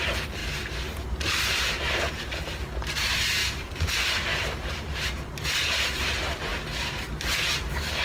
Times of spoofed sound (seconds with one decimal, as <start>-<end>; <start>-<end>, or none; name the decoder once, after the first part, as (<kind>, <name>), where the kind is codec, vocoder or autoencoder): 0.0-6.5 (vocoder, BigVGAN v2)